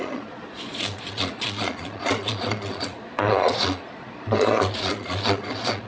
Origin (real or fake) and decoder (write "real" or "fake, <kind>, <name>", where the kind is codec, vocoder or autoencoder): fake, vocoder, Vocos